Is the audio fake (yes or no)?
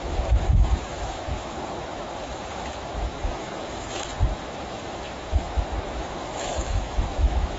yes